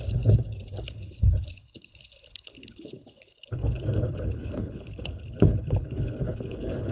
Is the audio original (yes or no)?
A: no